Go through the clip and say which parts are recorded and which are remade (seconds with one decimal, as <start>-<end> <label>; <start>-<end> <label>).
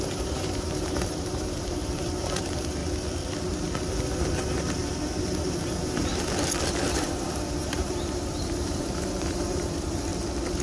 0.0-2.8 remade; 2.8-5.5 recorded; 5.5-6.1 remade; 6.1-6.9 recorded; 6.9-10.1 remade; 10.1-10.6 recorded